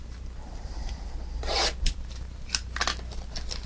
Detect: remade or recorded recorded